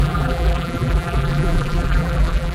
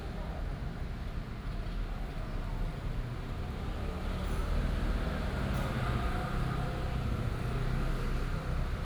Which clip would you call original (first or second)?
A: second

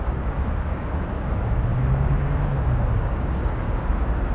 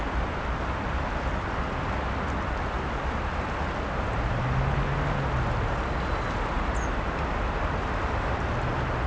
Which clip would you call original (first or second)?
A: second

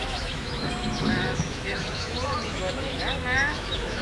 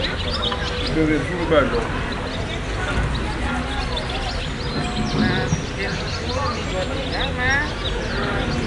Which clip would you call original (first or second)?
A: second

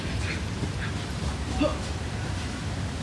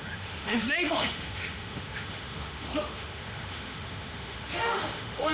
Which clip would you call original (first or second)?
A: first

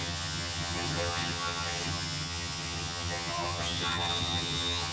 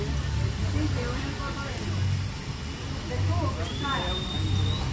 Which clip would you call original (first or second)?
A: second